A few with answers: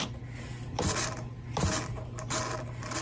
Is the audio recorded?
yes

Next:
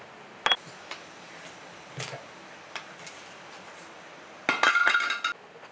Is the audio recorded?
yes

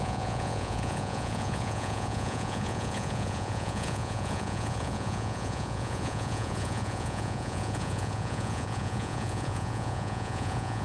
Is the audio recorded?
no